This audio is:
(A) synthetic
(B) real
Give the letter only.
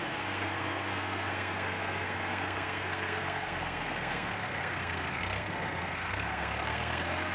A